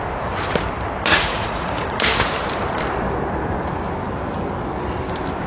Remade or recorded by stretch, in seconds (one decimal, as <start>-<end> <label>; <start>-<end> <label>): 0.0-1.1 recorded; 1.1-2.0 remade; 2.0-5.5 recorded